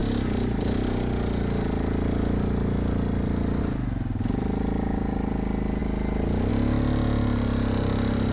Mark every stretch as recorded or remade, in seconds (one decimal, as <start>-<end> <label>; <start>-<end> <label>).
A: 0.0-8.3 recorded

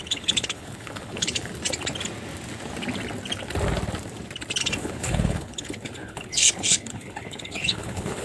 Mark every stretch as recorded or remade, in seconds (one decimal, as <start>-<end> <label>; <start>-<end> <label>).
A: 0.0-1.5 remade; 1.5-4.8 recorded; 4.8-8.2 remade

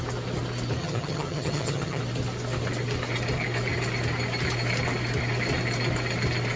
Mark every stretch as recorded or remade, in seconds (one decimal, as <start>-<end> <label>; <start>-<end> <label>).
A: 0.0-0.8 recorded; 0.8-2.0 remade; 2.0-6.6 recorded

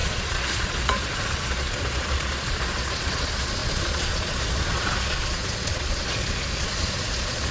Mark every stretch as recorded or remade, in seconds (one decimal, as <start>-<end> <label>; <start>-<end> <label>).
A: 0.0-7.5 remade

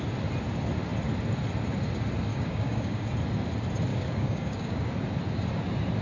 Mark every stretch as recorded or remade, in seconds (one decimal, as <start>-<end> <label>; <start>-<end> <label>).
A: 0.0-2.3 recorded; 2.3-3.1 remade; 3.1-3.9 recorded; 3.9-4.8 remade; 4.8-6.0 recorded